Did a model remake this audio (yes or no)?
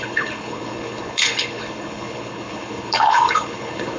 yes